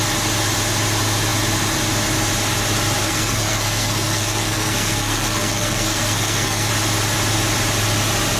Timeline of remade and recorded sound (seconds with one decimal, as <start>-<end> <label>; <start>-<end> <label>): 0.0-3.0 recorded; 3.0-6.7 remade; 6.7-8.4 recorded